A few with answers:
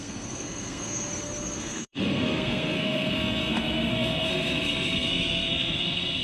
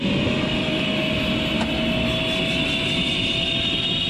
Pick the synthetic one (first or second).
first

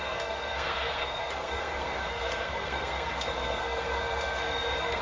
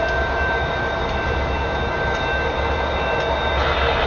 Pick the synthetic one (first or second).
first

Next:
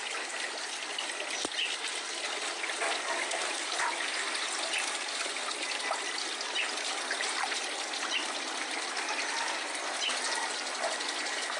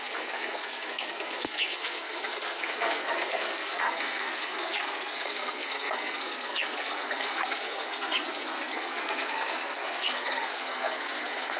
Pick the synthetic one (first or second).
second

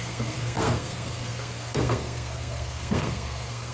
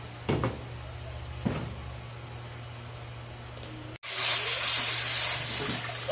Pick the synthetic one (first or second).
first